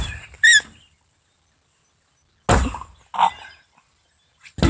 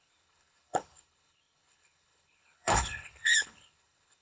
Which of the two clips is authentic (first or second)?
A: first